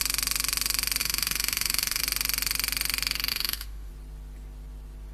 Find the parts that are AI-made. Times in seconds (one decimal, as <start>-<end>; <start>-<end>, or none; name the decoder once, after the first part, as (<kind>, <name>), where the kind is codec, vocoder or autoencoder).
1.0-2.0 (autoencoder, DAC-VAE); 3.3-3.9